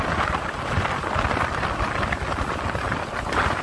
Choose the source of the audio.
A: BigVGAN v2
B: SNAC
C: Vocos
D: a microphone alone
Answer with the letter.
D